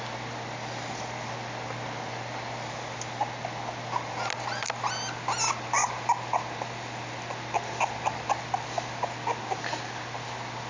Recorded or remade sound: recorded